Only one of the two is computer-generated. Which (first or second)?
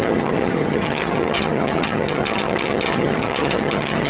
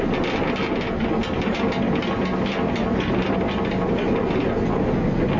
first